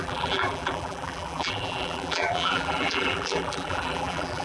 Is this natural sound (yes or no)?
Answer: no